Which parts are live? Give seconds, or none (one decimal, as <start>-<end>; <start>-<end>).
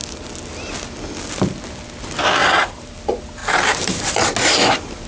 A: 0.0-2.4; 3.0-3.4; 4.1-5.1